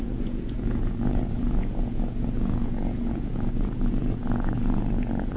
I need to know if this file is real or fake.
fake